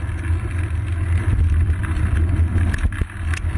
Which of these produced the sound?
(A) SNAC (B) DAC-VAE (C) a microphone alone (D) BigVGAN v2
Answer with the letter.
C